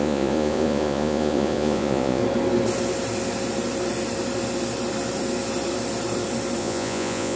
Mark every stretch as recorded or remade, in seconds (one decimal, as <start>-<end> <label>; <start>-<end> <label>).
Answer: 0.0-2.2 remade; 2.2-6.6 recorded; 6.6-7.4 remade